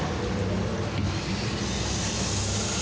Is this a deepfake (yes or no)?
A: no